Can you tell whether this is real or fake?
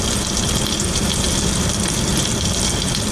fake